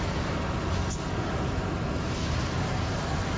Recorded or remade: recorded